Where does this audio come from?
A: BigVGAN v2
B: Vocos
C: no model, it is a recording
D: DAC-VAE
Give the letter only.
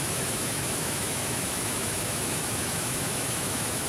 D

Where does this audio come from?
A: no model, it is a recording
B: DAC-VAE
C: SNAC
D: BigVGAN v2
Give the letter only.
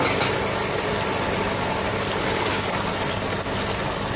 A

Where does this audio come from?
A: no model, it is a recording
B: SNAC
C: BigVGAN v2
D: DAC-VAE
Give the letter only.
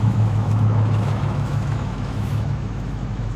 D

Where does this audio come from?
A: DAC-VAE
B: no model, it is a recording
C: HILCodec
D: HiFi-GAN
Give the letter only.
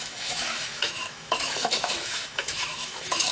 A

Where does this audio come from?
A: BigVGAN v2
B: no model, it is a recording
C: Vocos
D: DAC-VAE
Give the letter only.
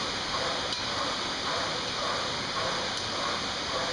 B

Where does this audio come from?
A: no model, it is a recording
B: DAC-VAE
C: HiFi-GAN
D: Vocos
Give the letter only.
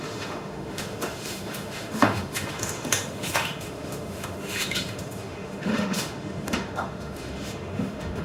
B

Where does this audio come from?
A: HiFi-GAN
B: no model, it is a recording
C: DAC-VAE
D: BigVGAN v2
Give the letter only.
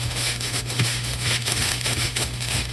C